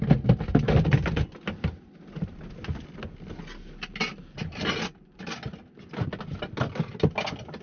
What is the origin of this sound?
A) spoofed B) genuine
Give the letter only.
B